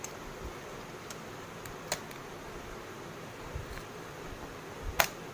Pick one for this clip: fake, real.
real